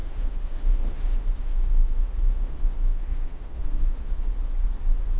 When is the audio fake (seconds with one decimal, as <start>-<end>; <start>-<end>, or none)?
0.0-4.3